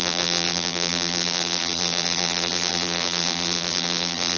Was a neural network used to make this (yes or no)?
yes